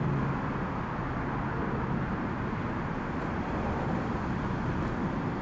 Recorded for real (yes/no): yes